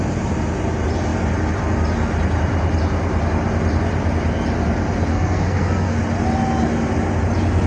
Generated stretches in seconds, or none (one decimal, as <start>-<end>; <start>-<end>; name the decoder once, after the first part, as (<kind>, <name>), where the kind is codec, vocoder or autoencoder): 5.1-6.0 (codec, SNAC)